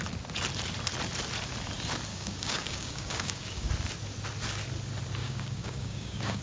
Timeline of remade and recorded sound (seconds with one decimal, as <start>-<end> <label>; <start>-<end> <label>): 0.0-2.1 recorded; 2.1-3.7 remade; 3.7-5.2 recorded; 5.2-6.4 remade